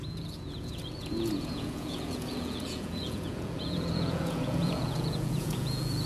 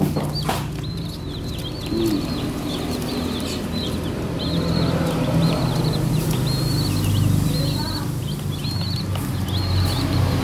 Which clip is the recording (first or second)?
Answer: second